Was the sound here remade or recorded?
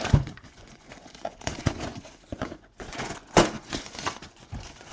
remade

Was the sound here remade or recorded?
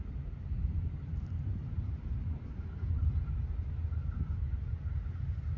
recorded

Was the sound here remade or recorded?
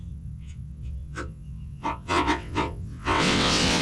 remade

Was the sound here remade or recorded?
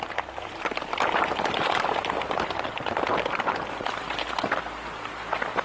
recorded